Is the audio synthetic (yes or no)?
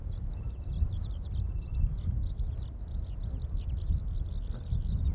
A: no